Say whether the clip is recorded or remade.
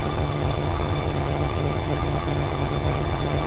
remade